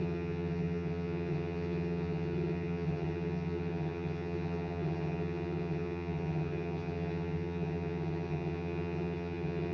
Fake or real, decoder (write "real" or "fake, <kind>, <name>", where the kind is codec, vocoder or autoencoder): fake, vocoder, HiFi-GAN